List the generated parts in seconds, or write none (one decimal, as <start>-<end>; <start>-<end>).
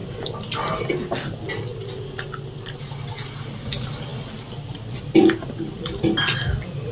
none